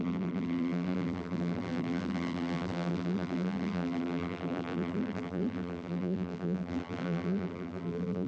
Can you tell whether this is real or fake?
fake